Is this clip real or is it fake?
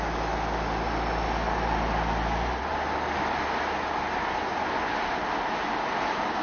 real